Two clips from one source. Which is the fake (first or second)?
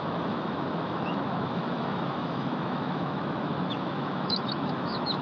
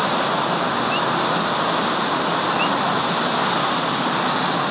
first